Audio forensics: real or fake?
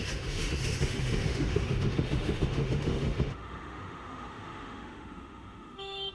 fake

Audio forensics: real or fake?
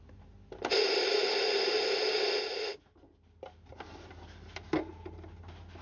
real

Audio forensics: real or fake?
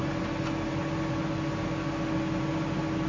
real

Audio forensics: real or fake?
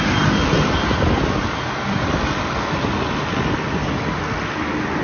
real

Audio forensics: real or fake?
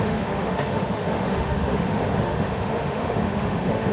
fake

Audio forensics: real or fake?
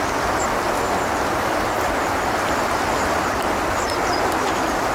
real